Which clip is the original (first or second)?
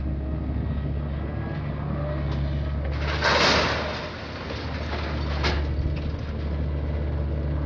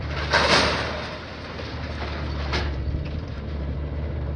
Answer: first